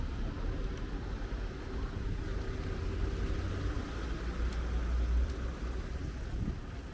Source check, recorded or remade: recorded